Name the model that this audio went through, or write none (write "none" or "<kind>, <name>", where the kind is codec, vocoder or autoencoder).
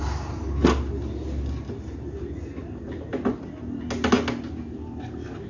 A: none